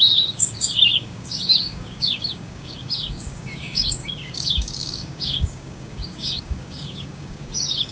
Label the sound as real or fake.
fake